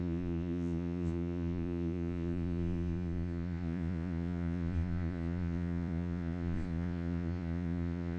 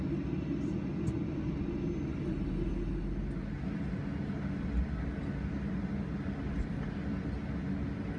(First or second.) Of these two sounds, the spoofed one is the first